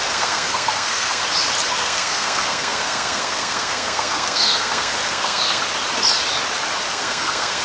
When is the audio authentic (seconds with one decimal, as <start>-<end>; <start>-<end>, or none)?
1.2-1.7; 5.6-6.9